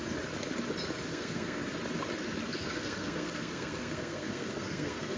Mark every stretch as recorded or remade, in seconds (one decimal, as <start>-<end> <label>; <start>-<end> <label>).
0.0-1.1 recorded; 1.1-1.6 remade; 1.6-2.5 recorded; 2.5-5.2 remade